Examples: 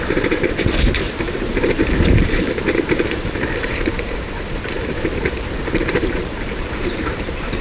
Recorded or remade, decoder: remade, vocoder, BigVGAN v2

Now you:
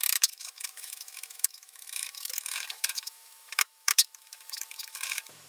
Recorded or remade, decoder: remade, autoencoder, DAC-VAE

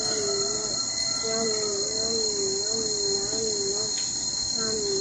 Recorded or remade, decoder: recorded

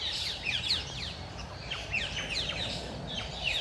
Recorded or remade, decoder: remade, vocoder, BigVGAN v2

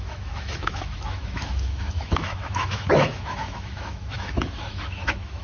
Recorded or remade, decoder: remade, autoencoder, DAC-VAE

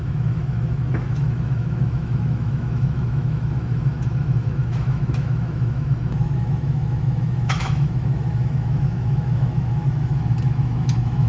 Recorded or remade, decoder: remade, autoencoder, DAC-VAE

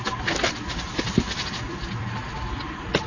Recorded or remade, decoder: recorded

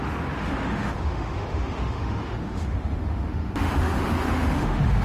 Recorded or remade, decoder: remade, autoencoder, DAC-VAE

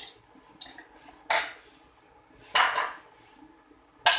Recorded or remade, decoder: recorded